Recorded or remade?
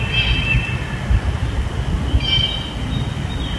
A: recorded